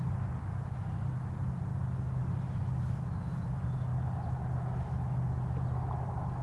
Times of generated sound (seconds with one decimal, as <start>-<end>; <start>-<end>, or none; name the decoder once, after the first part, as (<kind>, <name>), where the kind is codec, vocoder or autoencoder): none